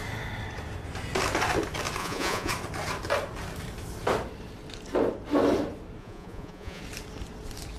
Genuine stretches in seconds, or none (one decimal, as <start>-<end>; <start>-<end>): 0.0-2.0; 2.5-6.0; 6.8-7.8